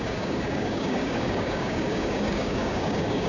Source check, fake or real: fake